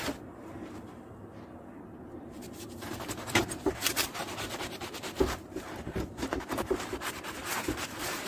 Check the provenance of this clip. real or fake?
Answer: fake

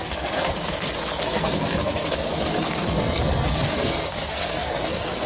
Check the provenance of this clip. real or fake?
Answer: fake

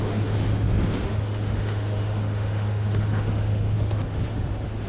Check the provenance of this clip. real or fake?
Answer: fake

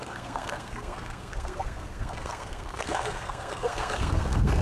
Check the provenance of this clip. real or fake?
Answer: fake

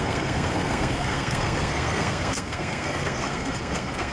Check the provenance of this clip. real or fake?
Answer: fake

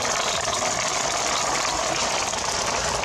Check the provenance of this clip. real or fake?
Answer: real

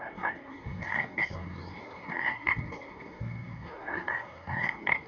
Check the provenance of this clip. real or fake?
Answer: fake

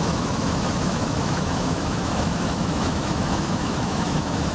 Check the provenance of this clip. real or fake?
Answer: fake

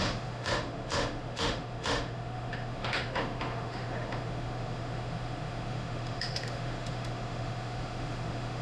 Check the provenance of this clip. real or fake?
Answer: fake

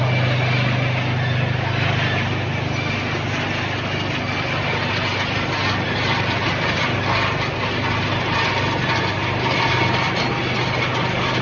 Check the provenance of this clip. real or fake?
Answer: real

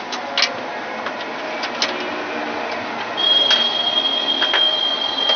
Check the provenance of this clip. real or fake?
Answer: real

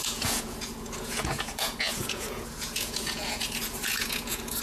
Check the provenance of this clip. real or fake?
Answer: fake